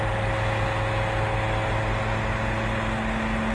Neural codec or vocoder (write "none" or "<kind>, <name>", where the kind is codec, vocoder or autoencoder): none